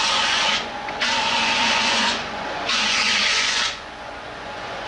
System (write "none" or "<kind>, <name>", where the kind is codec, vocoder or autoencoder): vocoder, Vocos